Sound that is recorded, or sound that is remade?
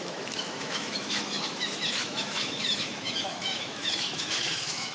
remade